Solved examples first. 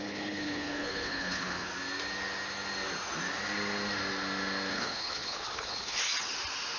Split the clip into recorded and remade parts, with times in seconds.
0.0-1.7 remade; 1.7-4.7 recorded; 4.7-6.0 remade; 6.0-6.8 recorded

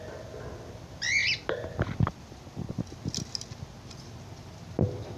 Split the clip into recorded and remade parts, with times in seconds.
0.0-5.2 recorded

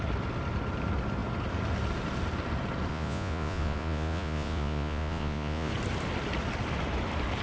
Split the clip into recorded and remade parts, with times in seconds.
0.0-2.9 recorded; 2.9-5.7 remade; 5.7-7.4 recorded

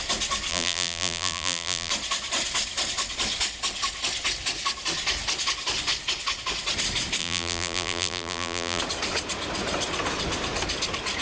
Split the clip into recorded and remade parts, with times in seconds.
0.0-0.5 recorded; 0.5-1.9 remade; 1.9-7.2 recorded; 7.2-8.8 remade; 8.8-11.2 recorded

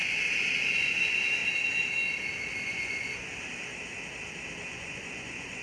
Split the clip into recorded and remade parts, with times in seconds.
0.0-0.6 recorded; 0.6-1.4 remade; 1.4-2.6 recorded; 2.6-3.2 remade; 3.2-4.6 recorded; 4.6-5.6 remade

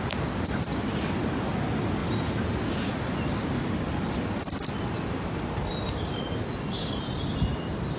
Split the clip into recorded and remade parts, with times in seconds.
0.0-8.0 recorded

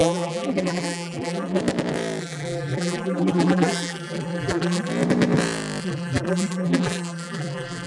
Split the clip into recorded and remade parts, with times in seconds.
0.0-1.6 remade; 1.6-2.2 recorded; 2.2-4.9 remade; 4.9-5.8 recorded; 5.8-7.9 remade